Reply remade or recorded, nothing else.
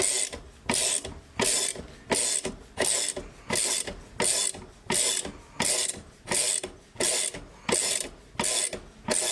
recorded